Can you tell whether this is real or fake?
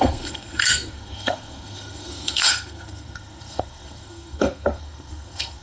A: fake